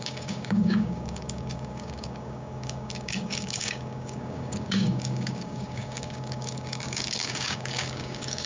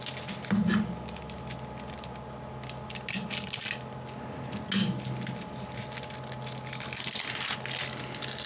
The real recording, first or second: second